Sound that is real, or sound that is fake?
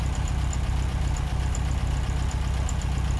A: real